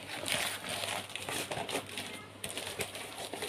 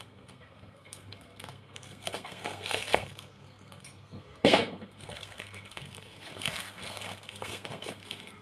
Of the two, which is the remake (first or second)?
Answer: second